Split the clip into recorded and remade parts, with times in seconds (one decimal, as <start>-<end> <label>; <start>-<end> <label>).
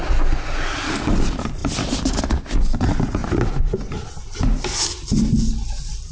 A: 0.0-6.1 recorded